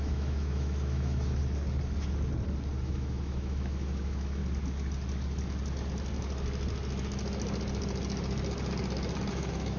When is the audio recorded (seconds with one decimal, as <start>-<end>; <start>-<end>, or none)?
1.4-2.8; 4.4-9.3